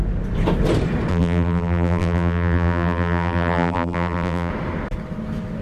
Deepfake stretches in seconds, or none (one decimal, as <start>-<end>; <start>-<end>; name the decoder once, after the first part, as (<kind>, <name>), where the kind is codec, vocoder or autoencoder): 1.1-4.5 (vocoder, BigVGAN v2)